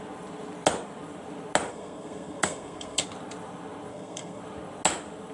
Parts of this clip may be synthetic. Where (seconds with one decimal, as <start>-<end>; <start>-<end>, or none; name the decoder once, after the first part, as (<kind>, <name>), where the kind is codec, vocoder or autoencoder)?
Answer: 1.7-3.0 (codec, SNAC); 3.9-4.4